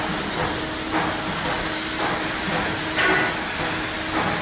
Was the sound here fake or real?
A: real